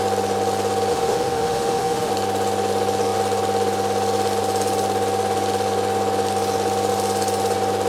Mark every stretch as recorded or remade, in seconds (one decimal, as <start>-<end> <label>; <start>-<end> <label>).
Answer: 0.0-0.9 recorded; 0.9-2.1 remade; 2.1-7.9 recorded

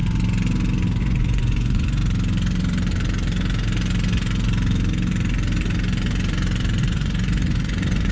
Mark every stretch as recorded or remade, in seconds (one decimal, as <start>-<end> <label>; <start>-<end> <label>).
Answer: 0.0-1.0 recorded; 1.0-2.0 remade; 2.0-6.8 recorded; 6.8-8.1 remade

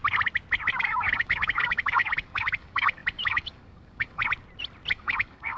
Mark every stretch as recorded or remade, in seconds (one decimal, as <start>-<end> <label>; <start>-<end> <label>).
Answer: 0.0-0.8 recorded; 0.8-4.2 remade; 4.2-4.9 recorded; 4.9-5.6 remade